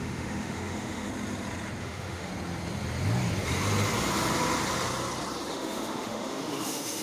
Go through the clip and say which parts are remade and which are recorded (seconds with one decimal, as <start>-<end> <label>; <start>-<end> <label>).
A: 0.0-1.1 remade; 1.1-1.8 recorded; 1.8-2.3 remade; 2.3-5.5 recorded; 5.5-7.0 remade